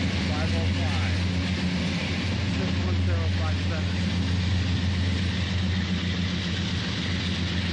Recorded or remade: recorded